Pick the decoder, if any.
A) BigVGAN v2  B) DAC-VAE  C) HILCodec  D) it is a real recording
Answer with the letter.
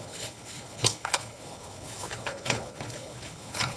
C